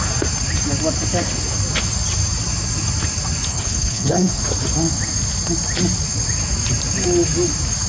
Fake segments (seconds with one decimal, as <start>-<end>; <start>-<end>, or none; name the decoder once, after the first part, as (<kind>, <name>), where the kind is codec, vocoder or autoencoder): 3.5-4.4 (codec, HILCodec)